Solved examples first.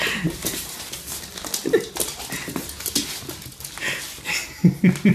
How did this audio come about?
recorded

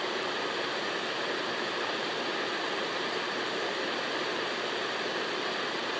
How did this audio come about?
remade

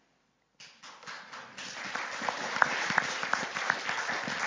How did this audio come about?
recorded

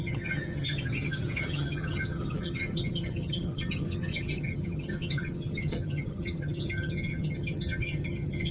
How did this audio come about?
remade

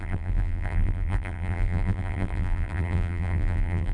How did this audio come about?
remade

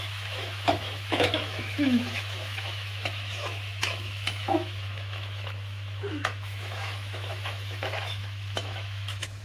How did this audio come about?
remade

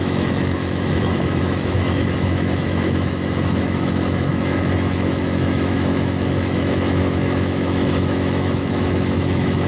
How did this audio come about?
remade